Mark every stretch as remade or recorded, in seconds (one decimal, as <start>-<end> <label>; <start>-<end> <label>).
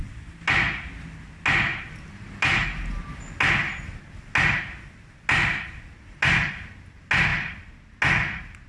0.0-8.7 recorded